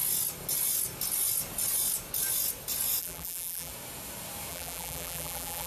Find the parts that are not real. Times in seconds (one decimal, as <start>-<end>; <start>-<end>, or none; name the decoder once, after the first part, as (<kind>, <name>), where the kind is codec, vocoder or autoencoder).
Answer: 3.0-3.7 (vocoder, BigVGAN v2); 4.5-5.7